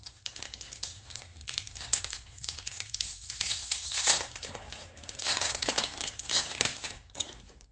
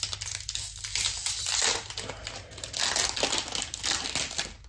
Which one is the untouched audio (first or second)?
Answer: second